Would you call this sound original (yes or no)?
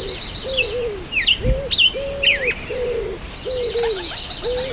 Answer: yes